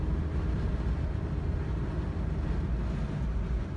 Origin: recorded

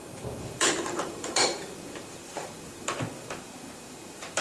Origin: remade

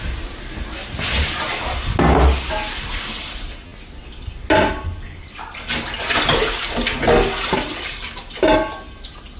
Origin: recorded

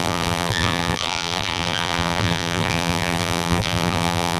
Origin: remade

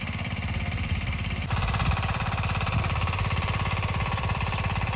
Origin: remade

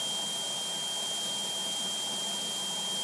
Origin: recorded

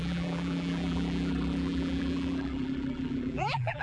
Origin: remade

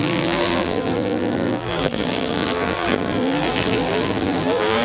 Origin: remade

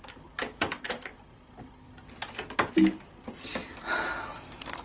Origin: recorded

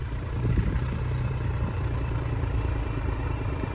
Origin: remade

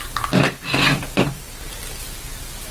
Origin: remade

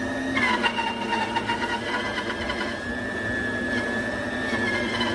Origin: recorded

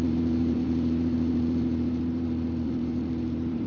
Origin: remade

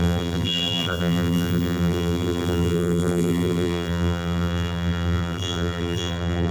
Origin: remade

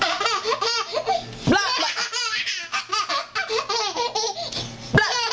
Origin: recorded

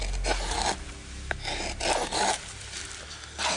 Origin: recorded